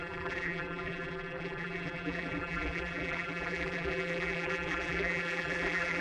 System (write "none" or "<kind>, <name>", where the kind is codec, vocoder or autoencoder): vocoder, BigVGAN v2